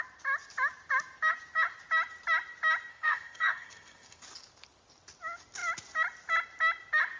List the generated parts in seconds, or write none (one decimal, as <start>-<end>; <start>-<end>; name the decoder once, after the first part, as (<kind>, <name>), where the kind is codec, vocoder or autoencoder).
2.9-4.2 (codec, SNAC)